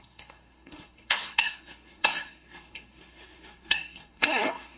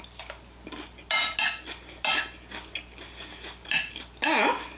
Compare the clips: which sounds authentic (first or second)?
second